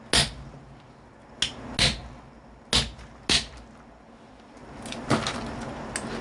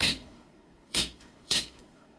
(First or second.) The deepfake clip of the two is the second